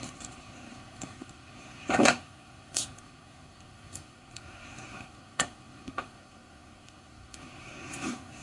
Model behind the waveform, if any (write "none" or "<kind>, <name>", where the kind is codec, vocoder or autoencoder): codec, SNAC